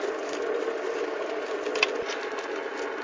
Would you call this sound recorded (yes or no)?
yes